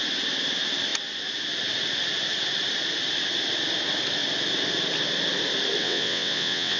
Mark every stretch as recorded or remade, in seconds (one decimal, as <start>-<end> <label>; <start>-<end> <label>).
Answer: 0.0-5.8 recorded; 5.8-6.8 remade